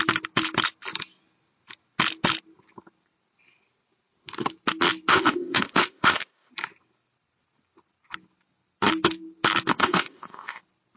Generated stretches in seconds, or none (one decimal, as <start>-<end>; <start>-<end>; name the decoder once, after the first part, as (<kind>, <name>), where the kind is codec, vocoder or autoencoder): 5.1-6.5 (codec, ZipCodec); 9.7-10.6